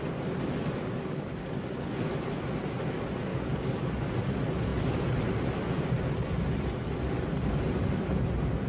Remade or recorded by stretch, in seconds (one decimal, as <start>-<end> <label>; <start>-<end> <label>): 0.0-1.0 recorded; 1.0-1.6 remade; 1.6-3.3 recorded; 3.3-4.1 remade; 4.1-8.7 recorded

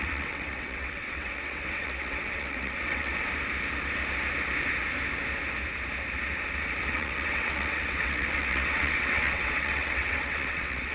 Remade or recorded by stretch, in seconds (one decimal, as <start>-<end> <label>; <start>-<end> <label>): 0.0-3.1 remade; 3.1-6.9 recorded; 6.9-10.9 remade

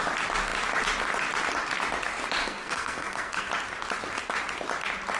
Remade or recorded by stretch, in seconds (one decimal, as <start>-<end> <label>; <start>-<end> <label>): 0.0-2.4 recorded; 2.4-3.5 remade; 3.5-5.2 recorded

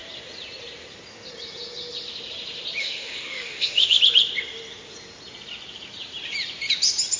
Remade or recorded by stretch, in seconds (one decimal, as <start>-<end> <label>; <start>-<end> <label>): 0.0-2.8 recorded; 2.8-4.0 remade; 4.0-7.2 recorded

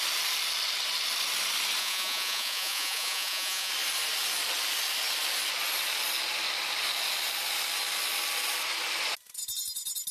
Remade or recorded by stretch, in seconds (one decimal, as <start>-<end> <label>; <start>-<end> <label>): 0.0-1.8 recorded; 1.8-3.7 remade; 3.7-10.1 recorded

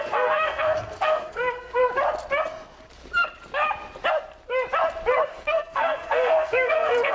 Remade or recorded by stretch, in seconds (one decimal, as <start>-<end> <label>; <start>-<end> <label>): 0.0-1.8 remade; 1.8-5.3 recorded; 5.3-7.1 remade